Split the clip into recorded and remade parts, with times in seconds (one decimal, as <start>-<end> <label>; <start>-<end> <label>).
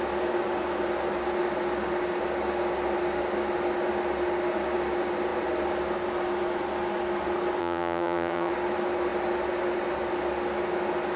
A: 0.0-7.6 recorded; 7.6-8.5 remade; 8.5-11.2 recorded